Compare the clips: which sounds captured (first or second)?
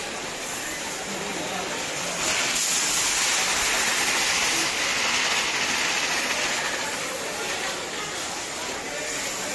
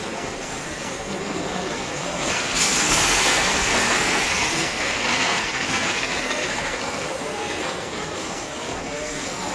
first